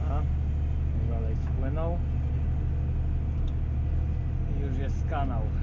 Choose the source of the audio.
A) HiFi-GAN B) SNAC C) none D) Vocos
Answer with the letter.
C